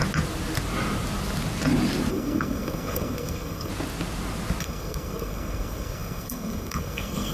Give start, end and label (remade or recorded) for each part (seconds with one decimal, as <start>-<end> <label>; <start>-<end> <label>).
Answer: 0.0-2.1 recorded; 2.1-3.7 remade; 3.7-4.6 recorded; 4.6-7.3 remade